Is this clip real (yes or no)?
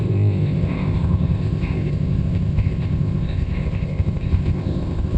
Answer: no